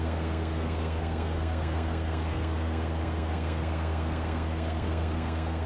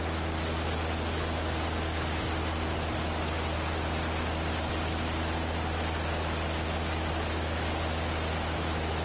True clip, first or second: second